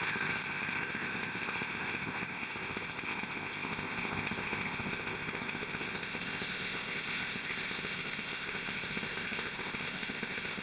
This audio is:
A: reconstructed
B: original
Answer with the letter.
A